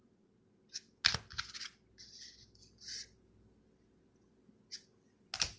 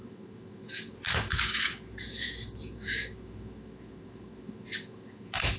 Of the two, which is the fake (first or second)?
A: second